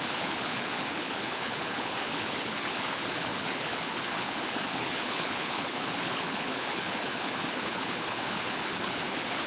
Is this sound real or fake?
fake